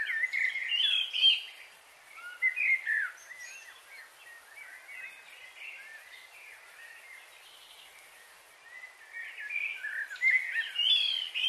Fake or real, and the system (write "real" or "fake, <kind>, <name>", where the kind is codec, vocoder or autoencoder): real